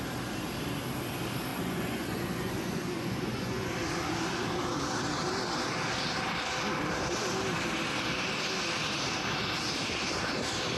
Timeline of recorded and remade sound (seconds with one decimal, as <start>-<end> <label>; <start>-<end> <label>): 0.0-1.5 recorded; 1.5-3.7 remade; 3.7-10.8 recorded